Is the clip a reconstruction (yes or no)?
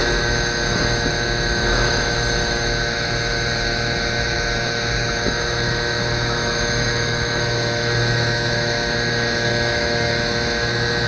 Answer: yes